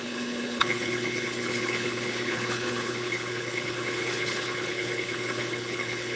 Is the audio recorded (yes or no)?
no